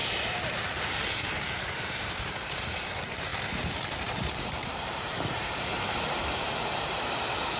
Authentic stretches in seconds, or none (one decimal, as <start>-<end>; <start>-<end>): none